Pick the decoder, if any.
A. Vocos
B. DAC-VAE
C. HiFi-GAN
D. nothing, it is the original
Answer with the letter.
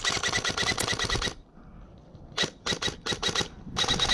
D